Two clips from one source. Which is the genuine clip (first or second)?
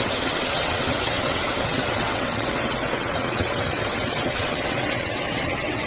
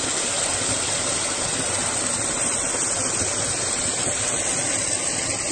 second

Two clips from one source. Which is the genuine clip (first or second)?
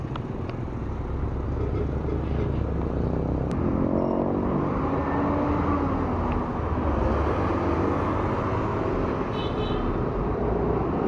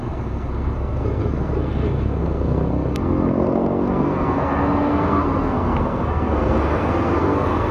first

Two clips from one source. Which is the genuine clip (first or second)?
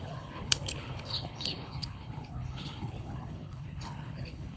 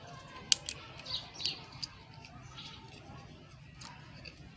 second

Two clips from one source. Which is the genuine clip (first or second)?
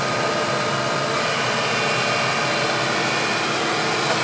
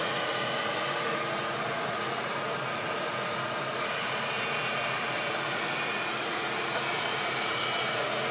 first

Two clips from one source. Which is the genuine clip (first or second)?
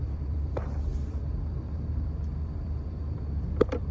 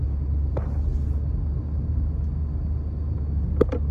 second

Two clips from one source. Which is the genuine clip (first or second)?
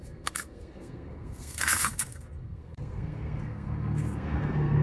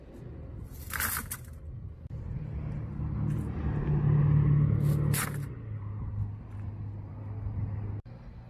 second